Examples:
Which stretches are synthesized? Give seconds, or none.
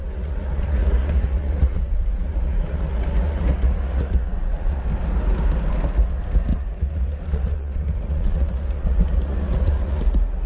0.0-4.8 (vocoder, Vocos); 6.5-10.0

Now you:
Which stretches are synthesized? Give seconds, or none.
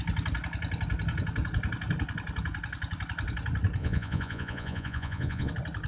3.8-5.5 (vocoder, Vocos)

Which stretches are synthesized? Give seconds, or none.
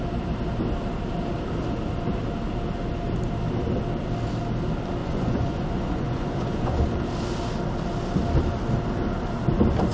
5.0-6.8 (vocoder, Vocos)